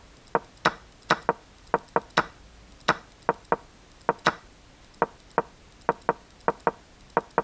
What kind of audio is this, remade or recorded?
recorded